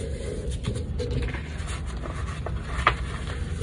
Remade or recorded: recorded